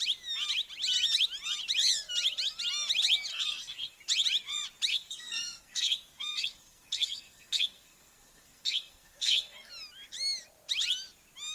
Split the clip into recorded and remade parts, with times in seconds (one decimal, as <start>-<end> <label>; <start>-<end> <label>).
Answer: 0.0-3.3 recorded; 3.3-4.0 remade; 4.0-4.9 recorded; 4.9-9.7 remade; 9.7-11.5 recorded